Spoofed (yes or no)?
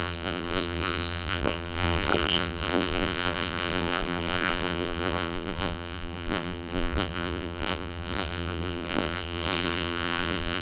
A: yes